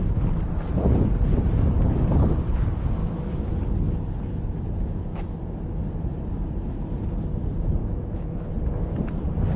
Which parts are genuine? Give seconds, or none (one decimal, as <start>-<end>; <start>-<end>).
0.0-3.0; 3.5-5.1; 5.9-7.8; 8.5-9.6

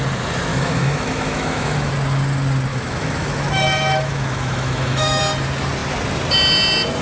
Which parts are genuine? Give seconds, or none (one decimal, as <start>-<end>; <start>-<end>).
0.0-0.5; 1.9-2.7; 5.2-7.0

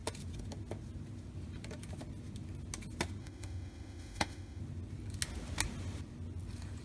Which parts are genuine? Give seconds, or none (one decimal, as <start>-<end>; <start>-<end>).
0.0-3.2; 4.6-6.8

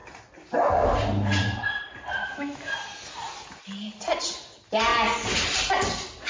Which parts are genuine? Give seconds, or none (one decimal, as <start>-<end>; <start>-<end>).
0.0-2.2; 2.7-6.3

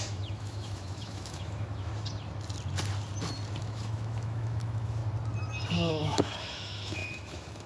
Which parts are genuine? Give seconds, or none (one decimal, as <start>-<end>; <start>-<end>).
1.9-3.6; 5.0-5.9

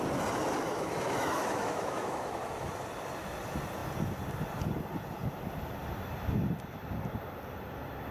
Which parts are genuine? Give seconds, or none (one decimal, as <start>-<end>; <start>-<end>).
0.0-0.7; 2.7-8.1

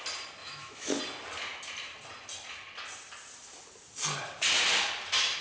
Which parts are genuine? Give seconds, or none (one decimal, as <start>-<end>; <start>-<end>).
0.0-0.4; 1.0-5.4

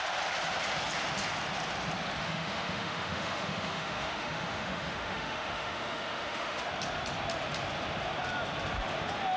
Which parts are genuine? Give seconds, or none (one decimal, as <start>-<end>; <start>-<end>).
0.0-2.2; 6.6-9.4